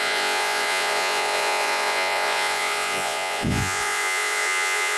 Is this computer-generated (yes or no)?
yes